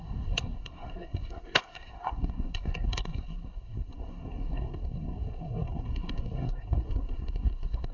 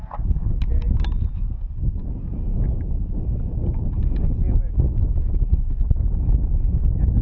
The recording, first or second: second